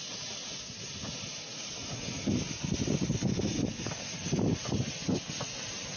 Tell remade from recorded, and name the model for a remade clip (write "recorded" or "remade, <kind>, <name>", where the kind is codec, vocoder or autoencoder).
recorded